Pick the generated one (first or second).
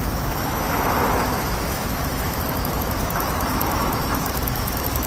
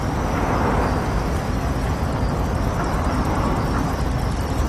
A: first